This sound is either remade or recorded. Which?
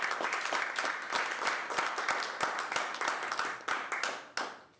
recorded